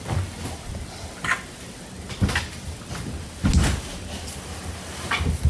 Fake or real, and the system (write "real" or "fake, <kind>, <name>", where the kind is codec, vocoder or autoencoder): real